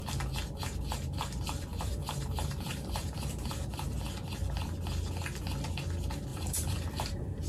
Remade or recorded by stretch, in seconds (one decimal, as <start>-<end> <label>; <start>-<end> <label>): 0.0-1.7 recorded; 1.7-4.0 remade; 4.0-6.3 recorded; 6.3-7.5 remade